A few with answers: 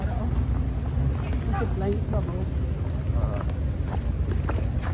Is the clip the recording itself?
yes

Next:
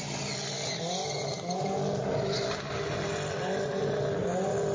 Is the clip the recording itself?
yes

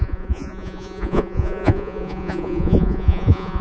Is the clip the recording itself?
no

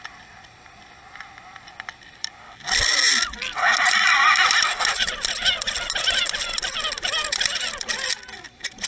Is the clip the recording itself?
yes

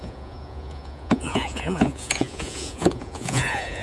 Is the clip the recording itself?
no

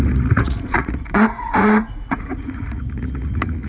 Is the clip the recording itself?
no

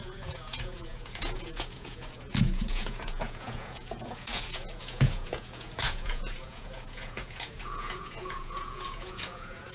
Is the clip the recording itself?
no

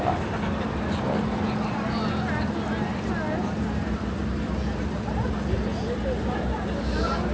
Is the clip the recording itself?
yes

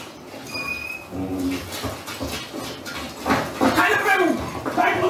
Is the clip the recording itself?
yes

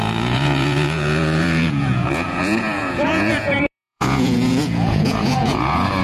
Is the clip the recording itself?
no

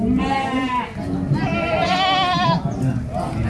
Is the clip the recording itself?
yes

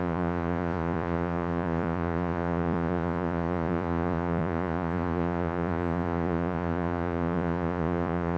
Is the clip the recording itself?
no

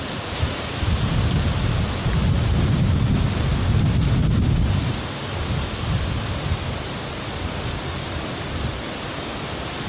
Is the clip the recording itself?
yes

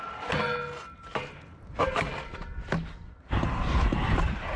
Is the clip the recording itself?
yes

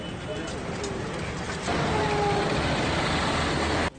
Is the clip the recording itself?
yes